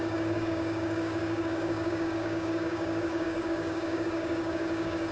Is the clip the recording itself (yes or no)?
no